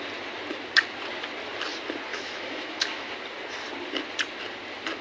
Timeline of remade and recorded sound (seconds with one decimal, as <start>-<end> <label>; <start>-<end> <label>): 0.0-2.1 recorded; 2.1-3.1 remade; 3.1-5.0 recorded